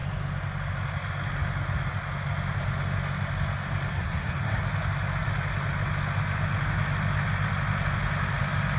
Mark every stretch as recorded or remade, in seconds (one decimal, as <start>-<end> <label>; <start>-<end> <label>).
0.0-3.9 recorded; 3.9-4.6 remade; 4.6-8.8 recorded

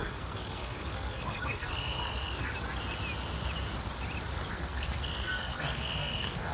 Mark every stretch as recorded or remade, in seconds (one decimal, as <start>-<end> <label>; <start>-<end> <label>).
0.0-2.5 remade; 2.5-4.5 recorded; 4.5-6.5 remade

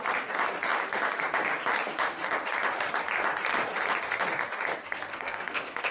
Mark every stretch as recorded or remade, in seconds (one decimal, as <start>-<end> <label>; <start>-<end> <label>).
0.0-5.1 recorded; 5.1-5.9 remade

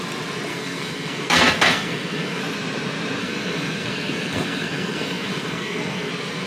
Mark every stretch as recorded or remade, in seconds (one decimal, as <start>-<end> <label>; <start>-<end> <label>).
0.0-0.5 recorded; 0.5-2.4 remade; 2.4-3.2 recorded; 3.2-6.1 remade; 6.1-6.5 recorded

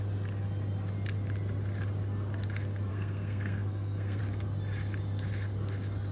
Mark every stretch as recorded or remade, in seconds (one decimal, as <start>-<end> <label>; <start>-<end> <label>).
0.0-2.9 recorded; 2.9-4.2 remade; 4.2-6.1 recorded